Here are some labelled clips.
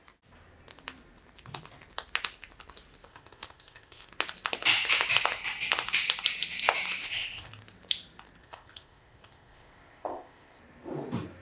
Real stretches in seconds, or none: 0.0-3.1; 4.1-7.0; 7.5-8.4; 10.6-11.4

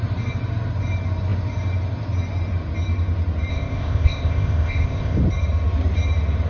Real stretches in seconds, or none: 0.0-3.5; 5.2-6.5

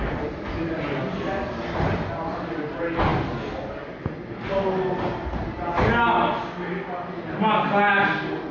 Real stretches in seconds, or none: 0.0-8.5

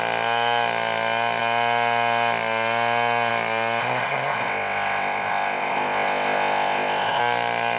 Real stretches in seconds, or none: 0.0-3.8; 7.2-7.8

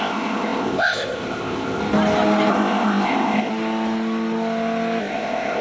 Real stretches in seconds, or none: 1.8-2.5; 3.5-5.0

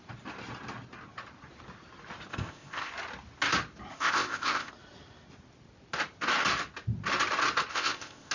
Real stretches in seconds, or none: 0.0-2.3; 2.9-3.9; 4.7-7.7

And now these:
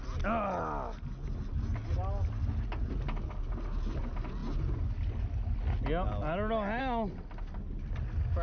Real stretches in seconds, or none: 0.0-8.4